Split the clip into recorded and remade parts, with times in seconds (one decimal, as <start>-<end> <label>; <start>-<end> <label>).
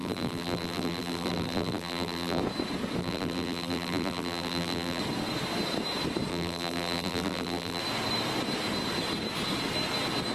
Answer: 0.0-2.4 remade; 2.4-3.0 recorded; 3.0-5.0 remade; 5.0-6.3 recorded; 6.3-7.8 remade; 7.8-10.3 recorded